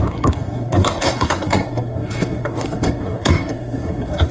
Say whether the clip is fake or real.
fake